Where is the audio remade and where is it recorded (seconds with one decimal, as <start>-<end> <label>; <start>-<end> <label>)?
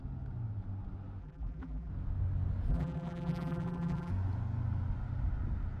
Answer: 0.0-1.2 recorded; 1.2-1.9 remade; 1.9-2.7 recorded; 2.7-4.1 remade; 4.1-5.8 recorded